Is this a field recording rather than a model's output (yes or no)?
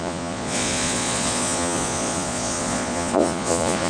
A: no